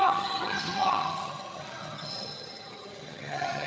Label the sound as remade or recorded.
remade